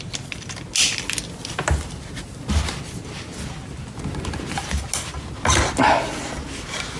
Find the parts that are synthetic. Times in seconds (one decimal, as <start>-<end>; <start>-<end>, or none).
none